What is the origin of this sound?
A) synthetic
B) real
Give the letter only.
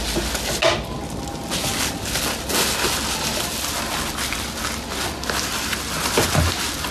B